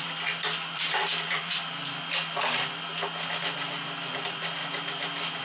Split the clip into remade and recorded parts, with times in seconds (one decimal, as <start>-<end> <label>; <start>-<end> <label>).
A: 0.0-4.6 remade; 4.6-5.4 recorded